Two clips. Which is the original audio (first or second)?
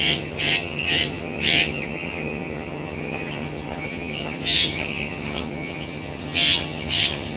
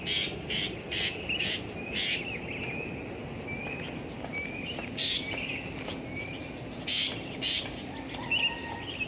second